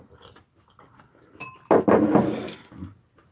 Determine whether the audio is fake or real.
real